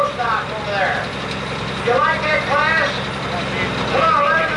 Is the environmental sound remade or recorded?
recorded